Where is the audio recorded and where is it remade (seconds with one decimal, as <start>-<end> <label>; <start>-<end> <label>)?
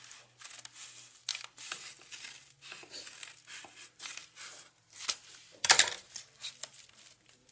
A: 0.0-1.3 recorded; 1.3-2.5 remade; 2.5-4.2 recorded; 4.2-6.5 remade; 6.5-7.5 recorded